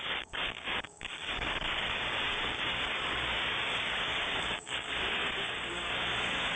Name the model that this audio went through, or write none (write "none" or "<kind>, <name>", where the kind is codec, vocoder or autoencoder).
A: codec, DAC